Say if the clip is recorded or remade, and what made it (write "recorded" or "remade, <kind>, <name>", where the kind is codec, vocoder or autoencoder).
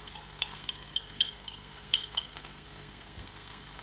remade, codec, SNAC